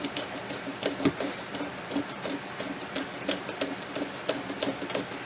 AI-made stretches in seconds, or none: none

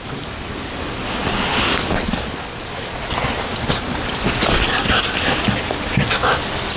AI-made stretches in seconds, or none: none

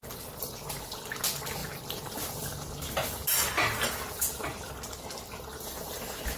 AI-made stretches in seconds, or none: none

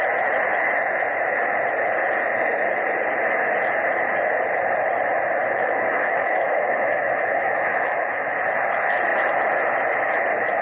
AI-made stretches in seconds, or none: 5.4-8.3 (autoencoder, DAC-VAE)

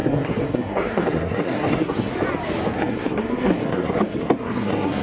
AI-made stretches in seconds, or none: 0.0-2.1 (codec, SNAC); 2.7-5.0

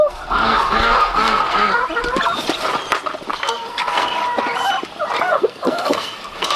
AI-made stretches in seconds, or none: 0.0-1.8 (codec, SNAC); 3.3-4.2; 5.2-6.6

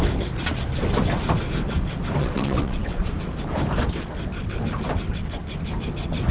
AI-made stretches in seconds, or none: 2.2-3.1 (vocoder, WaveNeXt)